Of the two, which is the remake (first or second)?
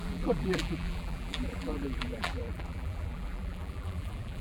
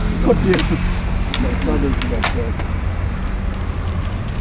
first